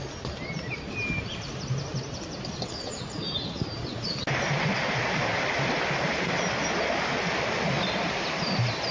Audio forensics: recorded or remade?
recorded